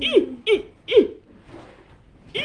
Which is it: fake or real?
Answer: real